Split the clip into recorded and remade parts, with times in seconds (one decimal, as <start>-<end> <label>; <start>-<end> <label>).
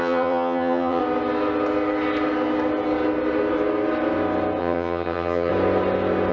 0.0-1.0 remade; 1.0-4.6 recorded; 4.6-5.5 remade; 5.5-6.3 recorded